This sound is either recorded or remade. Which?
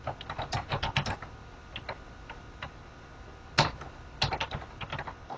recorded